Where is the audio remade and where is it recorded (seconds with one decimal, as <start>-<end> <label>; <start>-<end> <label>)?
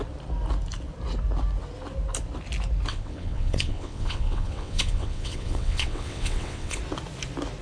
0.0-2.9 recorded; 2.9-6.8 remade; 6.8-7.6 recorded